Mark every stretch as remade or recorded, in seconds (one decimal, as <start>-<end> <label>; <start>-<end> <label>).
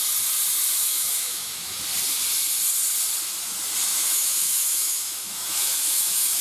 0.0-0.8 recorded; 0.8-1.8 remade; 1.8-3.9 recorded; 3.9-6.4 remade